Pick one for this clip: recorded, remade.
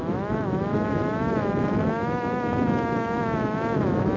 remade